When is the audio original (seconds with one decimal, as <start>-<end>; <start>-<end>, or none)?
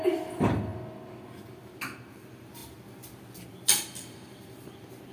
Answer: 0.7-2.1